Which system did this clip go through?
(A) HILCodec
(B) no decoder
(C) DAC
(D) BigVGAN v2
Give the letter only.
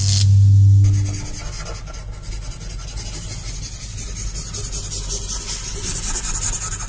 B